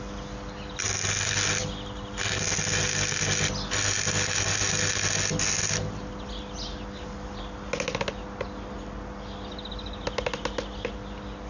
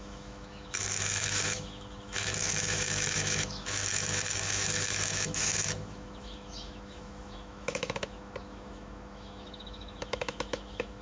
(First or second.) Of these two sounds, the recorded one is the first